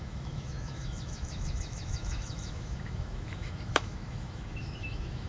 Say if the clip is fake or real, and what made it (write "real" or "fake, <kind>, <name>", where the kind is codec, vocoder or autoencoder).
fake, autoencoder, DAC-VAE